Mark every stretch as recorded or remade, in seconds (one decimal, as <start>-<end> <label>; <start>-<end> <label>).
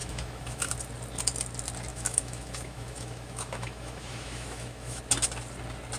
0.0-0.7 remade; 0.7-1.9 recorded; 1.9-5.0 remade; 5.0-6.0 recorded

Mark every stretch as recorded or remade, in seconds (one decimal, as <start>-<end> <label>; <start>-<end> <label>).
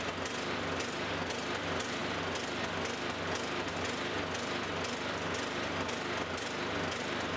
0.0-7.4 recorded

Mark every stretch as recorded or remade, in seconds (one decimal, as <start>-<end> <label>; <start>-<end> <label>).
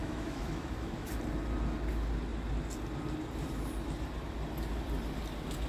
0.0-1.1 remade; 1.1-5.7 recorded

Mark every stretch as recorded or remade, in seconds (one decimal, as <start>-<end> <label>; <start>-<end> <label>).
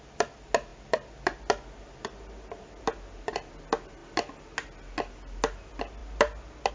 0.0-6.7 recorded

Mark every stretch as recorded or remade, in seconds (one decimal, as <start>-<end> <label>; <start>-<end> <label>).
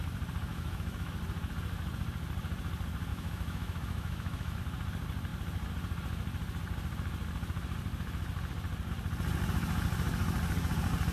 0.0-0.5 recorded; 0.5-1.1 remade; 1.1-3.1 recorded; 3.1-4.6 remade; 4.6-11.1 recorded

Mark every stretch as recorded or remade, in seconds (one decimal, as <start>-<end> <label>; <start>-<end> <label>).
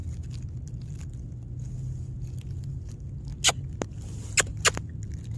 0.0-5.4 recorded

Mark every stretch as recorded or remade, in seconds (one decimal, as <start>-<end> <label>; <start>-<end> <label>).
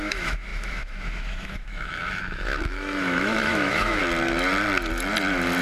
0.0-4.0 remade; 4.0-5.6 recorded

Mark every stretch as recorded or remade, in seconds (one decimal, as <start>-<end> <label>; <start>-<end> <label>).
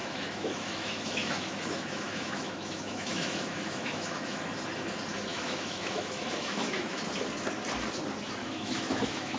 0.0-4.4 remade; 4.4-5.3 recorded; 5.3-7.0 remade; 7.0-8.4 recorded; 8.4-9.4 remade